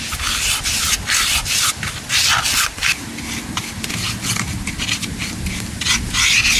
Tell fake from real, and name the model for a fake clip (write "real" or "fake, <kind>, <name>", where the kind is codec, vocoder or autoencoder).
real